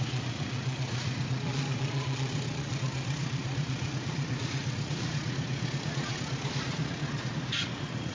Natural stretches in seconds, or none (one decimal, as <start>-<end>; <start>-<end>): none